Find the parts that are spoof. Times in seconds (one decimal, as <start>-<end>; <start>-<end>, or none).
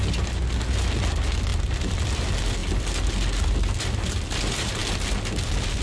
1.5-2.2